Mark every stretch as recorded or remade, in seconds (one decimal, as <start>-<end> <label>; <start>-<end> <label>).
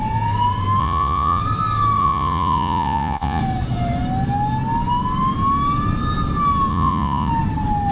0.0-0.8 recorded; 0.8-1.4 remade; 1.4-2.0 recorded; 2.0-3.4 remade; 3.4-6.7 recorded; 6.7-7.3 remade; 7.3-7.9 recorded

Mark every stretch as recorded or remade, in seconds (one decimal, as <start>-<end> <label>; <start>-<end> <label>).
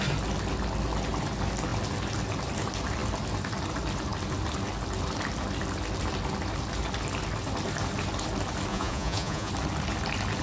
0.0-8.7 recorded; 8.7-9.5 remade; 9.5-10.4 recorded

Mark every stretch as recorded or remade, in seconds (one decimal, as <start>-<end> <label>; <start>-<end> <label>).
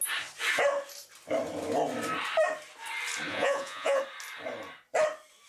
0.0-3.3 recorded; 3.3-4.0 remade; 4.0-5.5 recorded